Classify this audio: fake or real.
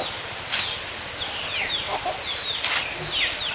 real